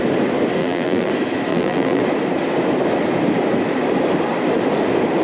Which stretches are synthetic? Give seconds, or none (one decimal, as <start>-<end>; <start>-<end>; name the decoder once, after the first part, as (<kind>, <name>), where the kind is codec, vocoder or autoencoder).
0.6-1.1 (vocoder, BigVGAN v2); 1.5-2.0